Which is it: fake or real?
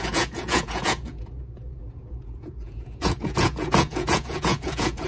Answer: fake